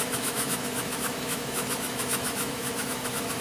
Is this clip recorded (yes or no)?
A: no